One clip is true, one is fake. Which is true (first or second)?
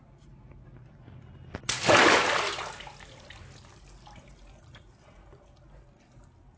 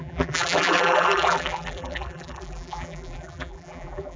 first